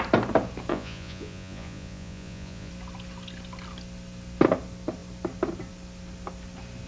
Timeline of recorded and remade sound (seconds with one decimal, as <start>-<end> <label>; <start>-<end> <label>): 0.0-0.7 recorded; 0.7-2.7 remade; 2.7-6.9 recorded